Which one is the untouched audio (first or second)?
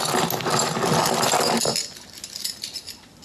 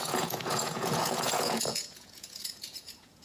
first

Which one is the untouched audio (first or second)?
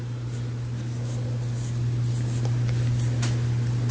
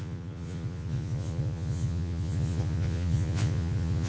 first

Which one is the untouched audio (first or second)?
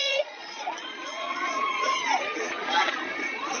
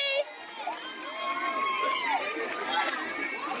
second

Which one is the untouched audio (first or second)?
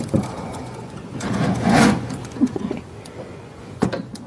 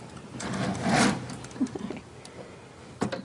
second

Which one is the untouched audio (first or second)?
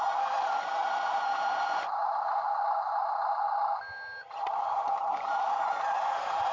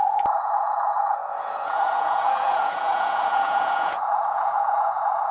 first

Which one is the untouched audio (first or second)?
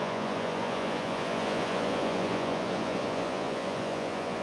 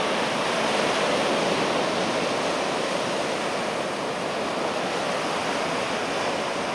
second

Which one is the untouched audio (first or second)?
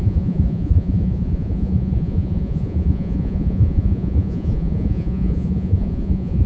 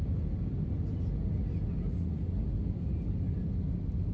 second